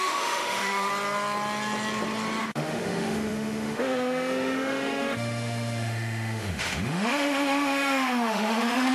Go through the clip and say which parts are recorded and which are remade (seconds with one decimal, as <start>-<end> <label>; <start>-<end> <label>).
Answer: 0.0-0.9 remade; 0.9-2.4 recorded; 2.4-8.9 remade